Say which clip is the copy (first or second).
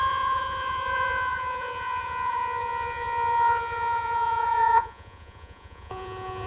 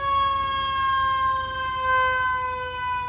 first